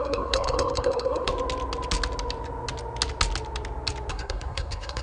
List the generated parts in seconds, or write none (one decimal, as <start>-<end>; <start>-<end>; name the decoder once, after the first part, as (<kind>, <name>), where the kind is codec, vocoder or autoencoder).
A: 0.0-1.3 (codec, SNAC); 4.1-5.0